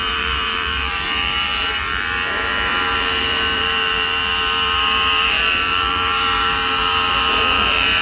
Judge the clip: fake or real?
fake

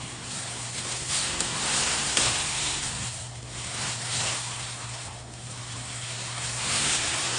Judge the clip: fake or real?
fake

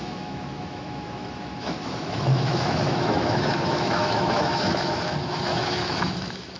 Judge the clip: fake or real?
fake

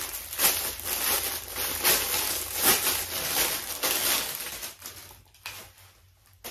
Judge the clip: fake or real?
real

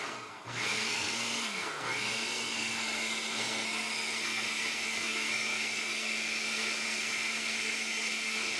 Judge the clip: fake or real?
fake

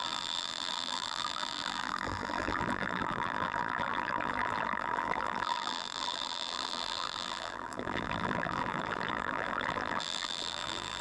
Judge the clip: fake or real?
fake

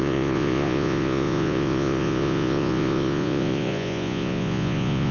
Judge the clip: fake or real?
fake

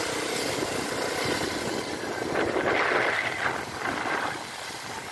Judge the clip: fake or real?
real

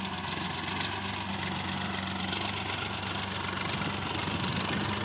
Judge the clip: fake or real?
real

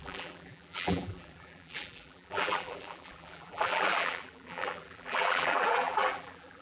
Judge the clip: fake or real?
fake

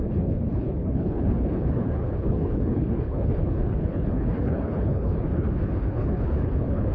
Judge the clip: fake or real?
fake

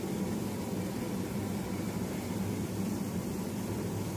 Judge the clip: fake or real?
fake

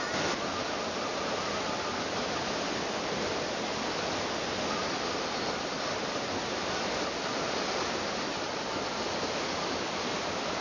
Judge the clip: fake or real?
real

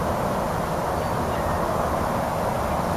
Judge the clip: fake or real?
real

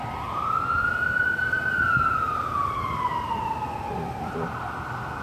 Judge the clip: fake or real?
real